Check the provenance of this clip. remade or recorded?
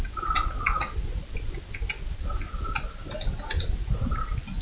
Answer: recorded